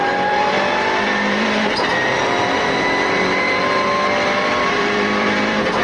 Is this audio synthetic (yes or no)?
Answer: yes